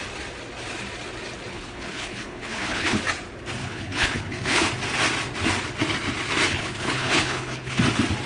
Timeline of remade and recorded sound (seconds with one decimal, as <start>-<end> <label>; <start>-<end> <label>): 0.0-1.5 recorded; 1.5-3.0 remade; 3.0-3.6 recorded; 3.6-4.7 remade; 4.7-6.5 recorded; 6.5-7.8 remade; 7.8-8.3 recorded